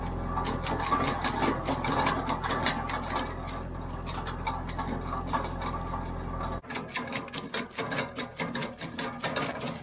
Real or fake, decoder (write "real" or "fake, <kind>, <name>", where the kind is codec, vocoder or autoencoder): real